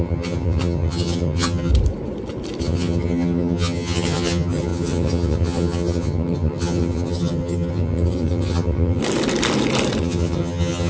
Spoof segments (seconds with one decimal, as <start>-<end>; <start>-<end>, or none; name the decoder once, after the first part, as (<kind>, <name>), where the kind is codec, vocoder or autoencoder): 0.0-1.7 (vocoder, HiFi-GAN); 2.6-9.0; 10.0-10.9